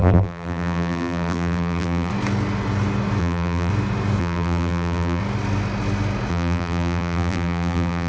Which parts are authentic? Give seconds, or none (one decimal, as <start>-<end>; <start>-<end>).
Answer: 2.1-3.2; 3.7-4.2; 5.2-6.3